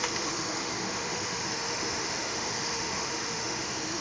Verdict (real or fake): fake